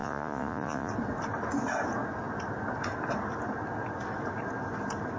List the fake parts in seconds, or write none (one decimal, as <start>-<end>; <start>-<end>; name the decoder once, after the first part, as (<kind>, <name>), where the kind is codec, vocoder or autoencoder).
0.0-0.9 (vocoder, Vocos)